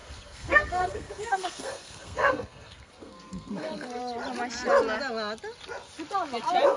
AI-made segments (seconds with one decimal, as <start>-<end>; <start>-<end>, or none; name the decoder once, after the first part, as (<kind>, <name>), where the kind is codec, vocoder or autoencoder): 0.0-4.0 (codec, SNAC)